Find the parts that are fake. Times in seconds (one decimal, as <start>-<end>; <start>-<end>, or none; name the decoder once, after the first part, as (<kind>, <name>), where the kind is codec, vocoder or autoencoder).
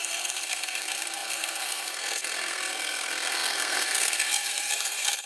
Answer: 0.0-5.3 (codec, SNAC)